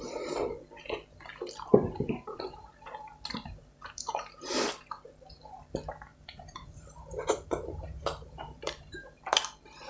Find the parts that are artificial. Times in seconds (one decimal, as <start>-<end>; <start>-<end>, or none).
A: 1.7-4.8; 6.1-9.2